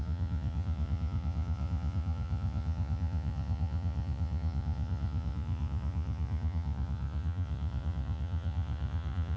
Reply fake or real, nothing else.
fake